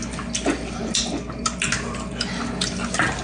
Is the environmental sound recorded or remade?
recorded